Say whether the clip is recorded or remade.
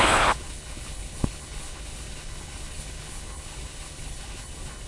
remade